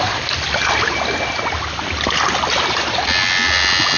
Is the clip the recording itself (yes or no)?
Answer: yes